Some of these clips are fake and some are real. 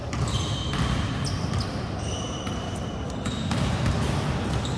fake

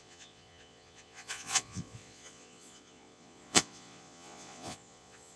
fake